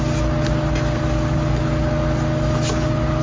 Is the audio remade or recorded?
recorded